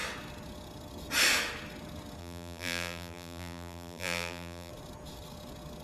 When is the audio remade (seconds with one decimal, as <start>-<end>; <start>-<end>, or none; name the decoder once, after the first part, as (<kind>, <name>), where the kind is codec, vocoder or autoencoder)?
2.2-4.7 (vocoder, BigVGAN v2)